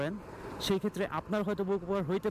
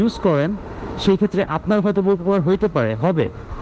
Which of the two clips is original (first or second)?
first